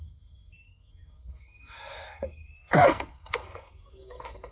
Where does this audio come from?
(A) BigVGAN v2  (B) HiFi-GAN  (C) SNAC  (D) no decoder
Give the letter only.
C